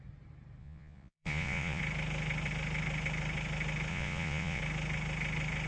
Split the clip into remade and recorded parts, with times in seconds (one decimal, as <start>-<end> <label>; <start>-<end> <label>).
0.0-0.6 recorded; 0.6-1.8 remade; 1.8-3.9 recorded; 3.9-4.6 remade; 4.6-5.7 recorded